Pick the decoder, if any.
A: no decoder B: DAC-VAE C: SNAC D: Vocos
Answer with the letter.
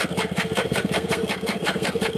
C